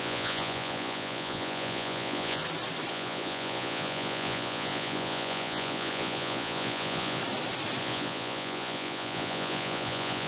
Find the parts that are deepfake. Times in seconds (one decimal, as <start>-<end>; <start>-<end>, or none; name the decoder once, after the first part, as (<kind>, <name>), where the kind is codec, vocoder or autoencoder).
0.0-2.4 (vocoder, Vocos); 2.9-7.2; 7.8-10.3